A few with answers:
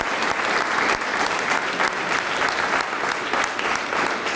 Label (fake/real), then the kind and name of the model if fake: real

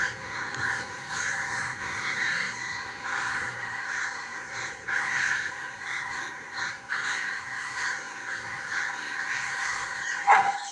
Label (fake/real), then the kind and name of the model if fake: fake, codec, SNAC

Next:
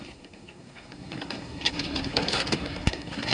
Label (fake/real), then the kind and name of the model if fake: fake, codec, SNAC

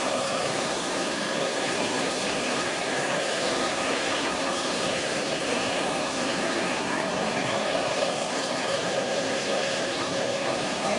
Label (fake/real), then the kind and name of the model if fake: fake, codec, SNAC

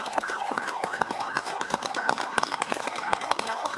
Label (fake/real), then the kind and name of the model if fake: fake, codec, SNAC